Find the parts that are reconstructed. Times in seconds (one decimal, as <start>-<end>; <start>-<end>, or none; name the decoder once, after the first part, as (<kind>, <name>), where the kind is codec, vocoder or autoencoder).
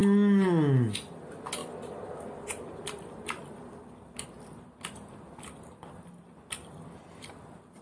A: none